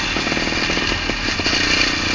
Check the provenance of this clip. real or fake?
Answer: real